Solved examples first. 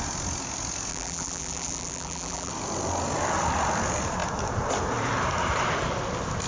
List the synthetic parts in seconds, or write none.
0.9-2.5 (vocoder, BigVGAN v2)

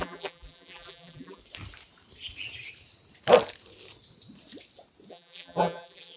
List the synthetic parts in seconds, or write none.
0.0-1.4 (vocoder, BigVGAN v2); 5.1-6.2

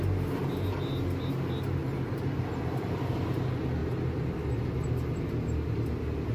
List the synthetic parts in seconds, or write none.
1.8-3.2 (vocoder, BigVGAN v2)